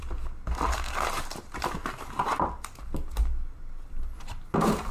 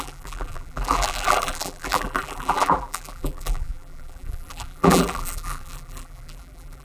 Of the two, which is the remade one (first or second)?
second